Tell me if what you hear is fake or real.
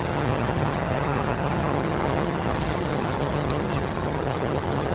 fake